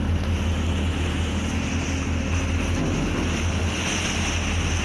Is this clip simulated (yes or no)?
no